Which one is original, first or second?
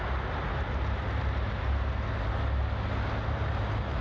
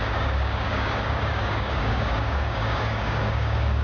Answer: first